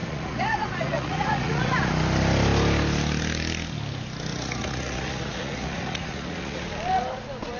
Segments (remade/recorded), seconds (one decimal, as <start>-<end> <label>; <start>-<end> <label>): 0.0-1.9 remade; 1.9-4.3 recorded; 4.3-6.7 remade; 6.7-7.6 recorded